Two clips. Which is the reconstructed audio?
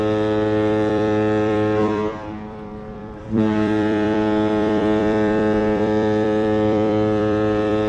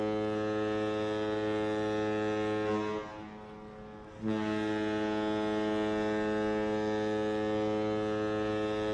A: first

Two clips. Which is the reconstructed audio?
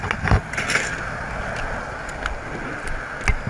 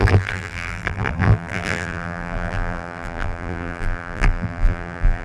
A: second